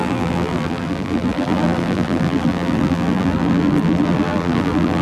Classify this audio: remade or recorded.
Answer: remade